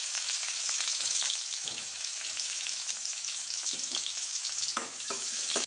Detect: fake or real fake